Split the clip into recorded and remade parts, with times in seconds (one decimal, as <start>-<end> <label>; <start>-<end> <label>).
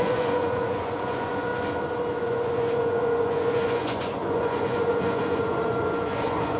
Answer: 0.0-1.5 remade; 1.5-2.2 recorded; 2.2-6.6 remade